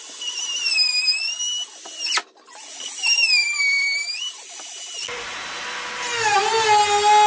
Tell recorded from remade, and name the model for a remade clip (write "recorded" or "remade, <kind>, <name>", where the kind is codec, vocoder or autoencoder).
recorded